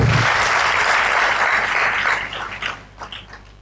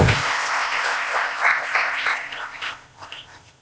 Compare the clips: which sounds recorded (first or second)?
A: first